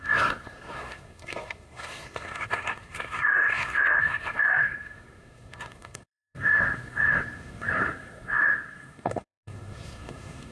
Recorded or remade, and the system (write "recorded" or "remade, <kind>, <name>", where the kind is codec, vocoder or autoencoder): remade, codec, SNAC